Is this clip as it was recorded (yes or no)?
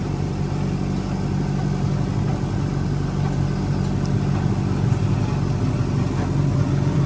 yes